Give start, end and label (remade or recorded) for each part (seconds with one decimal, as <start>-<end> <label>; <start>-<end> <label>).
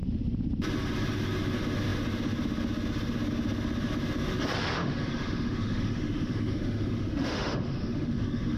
0.0-4.8 recorded; 4.8-8.6 remade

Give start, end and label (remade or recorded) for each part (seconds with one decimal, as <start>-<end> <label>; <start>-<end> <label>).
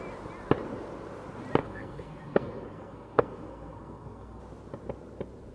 0.0-1.6 recorded; 1.6-4.4 remade; 4.4-5.5 recorded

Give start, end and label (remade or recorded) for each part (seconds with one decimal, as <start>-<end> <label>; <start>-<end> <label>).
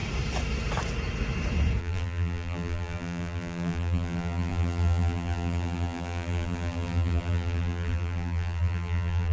0.0-1.8 recorded; 1.8-9.3 remade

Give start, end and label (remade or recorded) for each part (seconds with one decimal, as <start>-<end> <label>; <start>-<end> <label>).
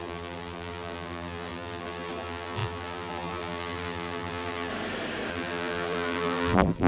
0.0-4.7 remade; 4.7-5.3 recorded; 5.3-6.9 remade